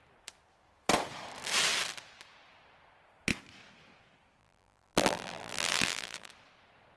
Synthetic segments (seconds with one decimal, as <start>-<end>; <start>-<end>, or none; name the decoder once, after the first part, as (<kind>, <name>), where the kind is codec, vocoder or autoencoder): 4.4-6.3 (vocoder, BigVGAN v2)